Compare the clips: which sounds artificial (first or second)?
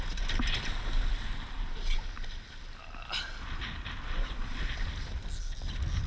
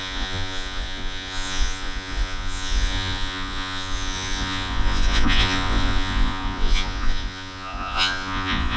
second